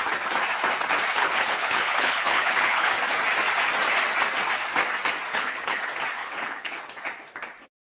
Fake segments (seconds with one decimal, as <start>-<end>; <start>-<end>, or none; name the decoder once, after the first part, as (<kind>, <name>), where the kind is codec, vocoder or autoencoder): 1.2-2.9 (codec, HILCodec); 5.3-5.8; 6.2-6.8